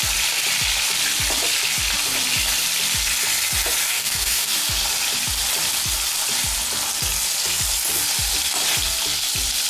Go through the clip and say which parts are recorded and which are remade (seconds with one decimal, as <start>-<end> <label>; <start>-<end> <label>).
0.0-3.9 recorded; 3.9-4.5 remade; 4.5-9.7 recorded